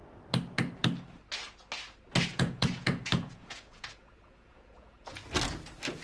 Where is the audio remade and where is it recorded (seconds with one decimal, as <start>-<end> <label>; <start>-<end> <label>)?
0.0-2.3 recorded; 2.3-5.3 remade; 5.3-6.0 recorded